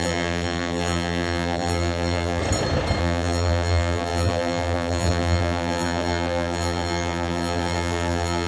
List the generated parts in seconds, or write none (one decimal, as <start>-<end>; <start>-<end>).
0.0-2.4; 3.0-8.5